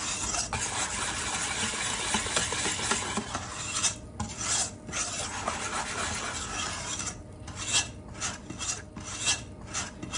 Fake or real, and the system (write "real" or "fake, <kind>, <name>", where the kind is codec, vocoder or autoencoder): real